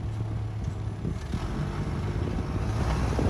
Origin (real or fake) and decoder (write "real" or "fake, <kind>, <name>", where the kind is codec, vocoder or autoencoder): real